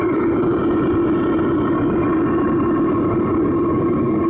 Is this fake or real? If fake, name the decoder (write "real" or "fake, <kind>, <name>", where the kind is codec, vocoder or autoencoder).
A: real